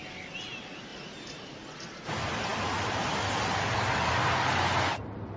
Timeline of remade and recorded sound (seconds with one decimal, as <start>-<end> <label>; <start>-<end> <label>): 0.0-5.4 recorded